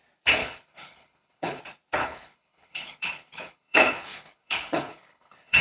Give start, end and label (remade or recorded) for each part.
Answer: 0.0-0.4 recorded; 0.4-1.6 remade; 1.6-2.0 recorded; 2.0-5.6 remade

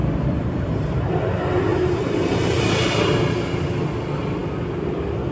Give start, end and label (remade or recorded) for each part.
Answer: 0.0-1.0 remade; 1.0-1.7 recorded; 1.7-3.1 remade; 3.1-5.3 recorded

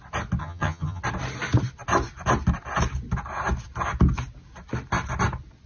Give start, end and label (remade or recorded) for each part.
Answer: 0.0-0.4 recorded; 0.4-1.0 remade; 1.0-5.7 recorded

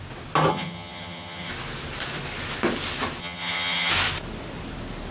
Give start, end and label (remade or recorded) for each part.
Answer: 0.0-0.5 recorded; 0.5-1.5 remade; 1.5-3.2 recorded; 3.2-3.9 remade; 3.9-5.1 recorded

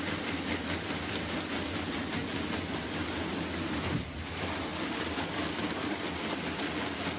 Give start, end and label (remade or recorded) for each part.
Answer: 0.0-7.2 recorded

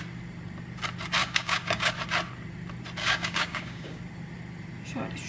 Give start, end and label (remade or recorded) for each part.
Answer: 0.0-1.2 recorded; 1.2-1.9 remade; 1.9-3.0 recorded; 3.0-4.0 remade; 4.0-5.3 recorded

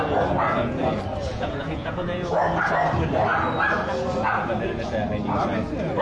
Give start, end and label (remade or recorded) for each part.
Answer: 0.0-1.3 recorded; 1.3-2.3 remade; 2.3-6.0 recorded